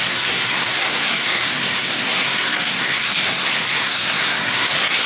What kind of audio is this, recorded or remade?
remade